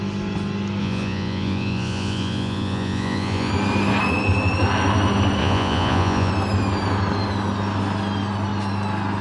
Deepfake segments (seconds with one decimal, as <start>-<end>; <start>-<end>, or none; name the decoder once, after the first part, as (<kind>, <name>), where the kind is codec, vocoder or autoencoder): 0.8-3.5 (vocoder, Vocos); 5.4-6.3